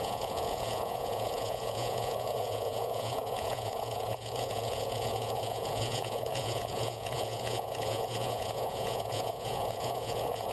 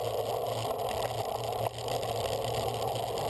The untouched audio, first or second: second